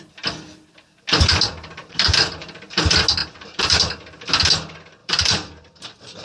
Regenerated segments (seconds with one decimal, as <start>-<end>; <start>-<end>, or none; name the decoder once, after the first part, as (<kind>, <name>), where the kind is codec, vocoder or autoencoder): 1.8-2.5 (vocoder, BigVGAN v2); 3.2-3.9; 5.0-6.2